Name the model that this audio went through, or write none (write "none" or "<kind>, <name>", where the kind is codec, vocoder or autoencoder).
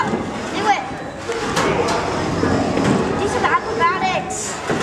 none